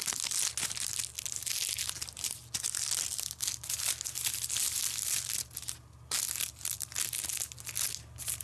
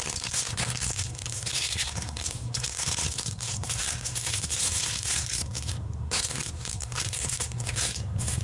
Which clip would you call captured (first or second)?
first